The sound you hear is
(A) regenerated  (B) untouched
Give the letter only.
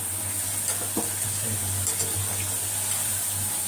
B